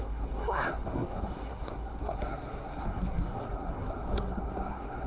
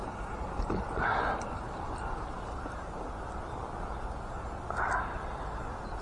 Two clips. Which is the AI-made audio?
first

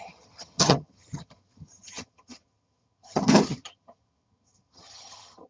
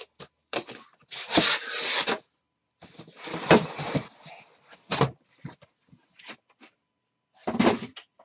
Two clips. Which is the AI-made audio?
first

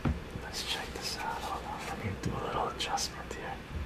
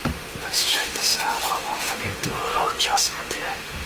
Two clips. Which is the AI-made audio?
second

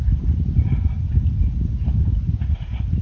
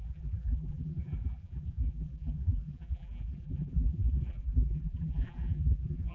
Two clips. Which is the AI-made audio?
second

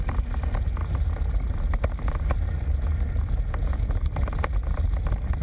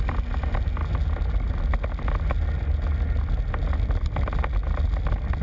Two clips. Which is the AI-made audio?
first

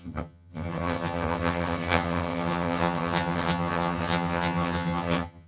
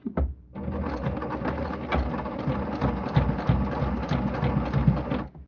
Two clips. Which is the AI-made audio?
first